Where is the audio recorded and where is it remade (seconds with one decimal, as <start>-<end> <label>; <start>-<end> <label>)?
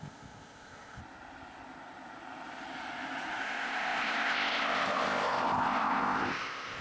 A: 0.0-1.0 remade; 1.0-3.4 recorded; 3.4-6.8 remade